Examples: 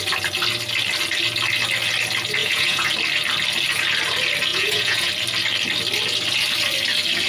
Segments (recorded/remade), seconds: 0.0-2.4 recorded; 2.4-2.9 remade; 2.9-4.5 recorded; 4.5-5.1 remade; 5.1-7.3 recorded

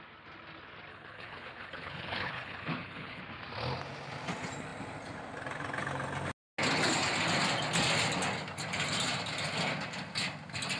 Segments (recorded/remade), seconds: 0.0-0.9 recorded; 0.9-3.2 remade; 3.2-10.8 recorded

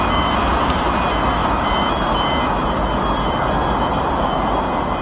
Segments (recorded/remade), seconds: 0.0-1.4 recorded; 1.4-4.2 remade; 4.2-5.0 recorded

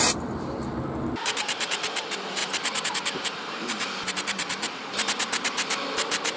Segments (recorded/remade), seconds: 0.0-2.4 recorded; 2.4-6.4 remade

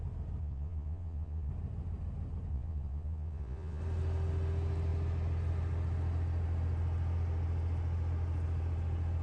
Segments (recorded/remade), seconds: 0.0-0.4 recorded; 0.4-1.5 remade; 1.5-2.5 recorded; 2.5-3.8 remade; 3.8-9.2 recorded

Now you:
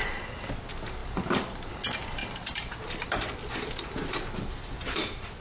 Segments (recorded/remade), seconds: 0.0-1.0 recorded; 1.0-1.7 remade; 1.7-2.2 recorded; 2.2-5.4 remade